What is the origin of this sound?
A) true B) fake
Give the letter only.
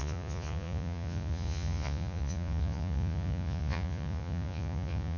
B